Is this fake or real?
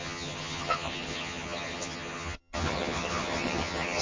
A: fake